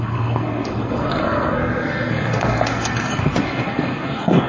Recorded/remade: remade